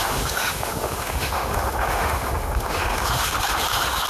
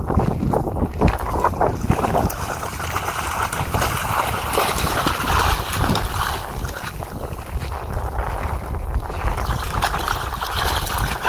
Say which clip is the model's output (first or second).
first